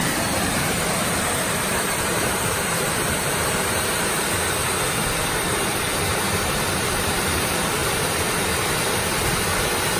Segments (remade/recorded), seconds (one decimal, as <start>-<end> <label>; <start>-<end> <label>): 0.0-4.3 remade; 4.3-6.1 recorded; 6.1-7.2 remade; 7.2-10.0 recorded